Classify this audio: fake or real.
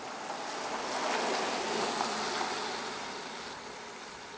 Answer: real